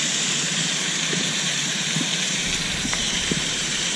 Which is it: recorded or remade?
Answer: remade